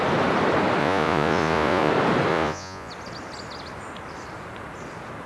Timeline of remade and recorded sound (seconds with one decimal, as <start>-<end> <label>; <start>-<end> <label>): 0.0-0.8 recorded; 0.8-1.9 remade; 1.9-2.3 recorded; 2.3-2.9 remade; 2.9-5.3 recorded